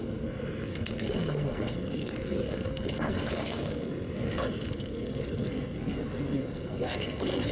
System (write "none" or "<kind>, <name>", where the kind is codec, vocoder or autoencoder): codec, SNAC